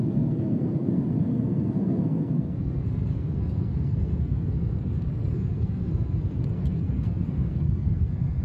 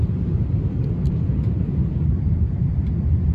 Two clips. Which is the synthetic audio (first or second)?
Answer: first